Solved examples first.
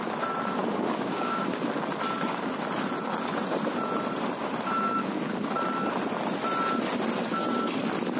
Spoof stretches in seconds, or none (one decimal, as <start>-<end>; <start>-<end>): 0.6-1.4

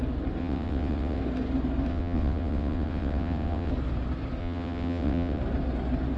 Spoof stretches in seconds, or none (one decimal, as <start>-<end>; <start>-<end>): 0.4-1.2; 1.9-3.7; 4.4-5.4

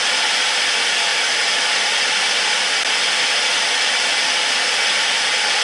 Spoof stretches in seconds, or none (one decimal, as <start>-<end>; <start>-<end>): none